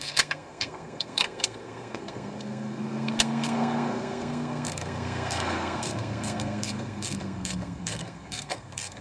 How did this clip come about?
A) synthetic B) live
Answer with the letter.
A